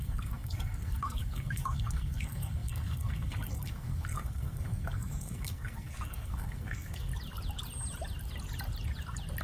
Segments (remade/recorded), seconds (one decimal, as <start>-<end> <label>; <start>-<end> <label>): 0.0-7.1 remade; 7.1-9.4 recorded